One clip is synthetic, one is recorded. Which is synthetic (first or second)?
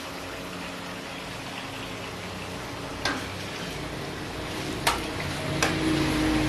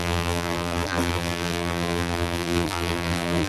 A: second